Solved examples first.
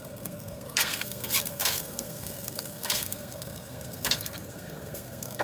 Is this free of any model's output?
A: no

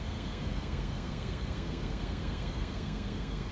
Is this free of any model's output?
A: no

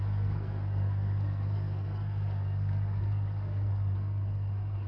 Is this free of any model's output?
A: no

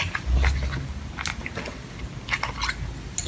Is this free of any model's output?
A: yes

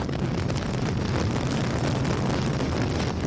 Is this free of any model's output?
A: yes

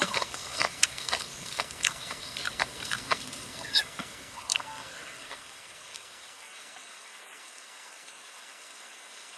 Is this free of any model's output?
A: no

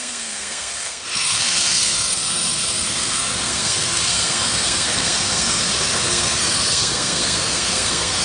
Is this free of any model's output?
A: no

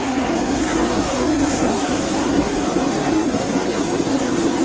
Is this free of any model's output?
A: no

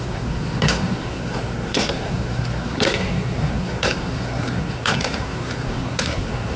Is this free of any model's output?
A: no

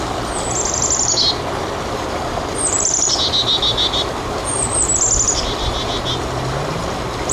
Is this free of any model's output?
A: yes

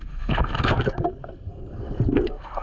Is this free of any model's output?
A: no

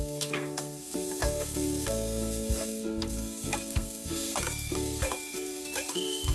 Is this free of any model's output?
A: no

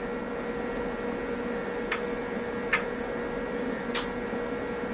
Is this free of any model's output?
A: yes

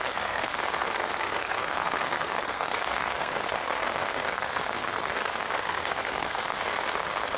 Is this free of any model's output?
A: no